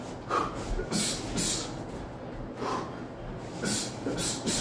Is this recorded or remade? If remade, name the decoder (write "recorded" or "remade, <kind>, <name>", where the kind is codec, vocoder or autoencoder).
recorded